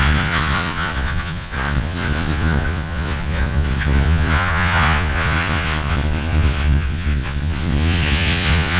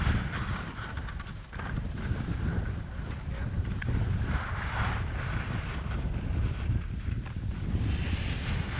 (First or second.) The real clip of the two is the second